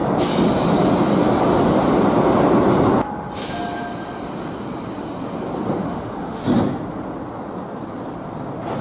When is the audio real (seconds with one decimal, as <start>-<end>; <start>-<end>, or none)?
0.0-5.8; 6.4-8.8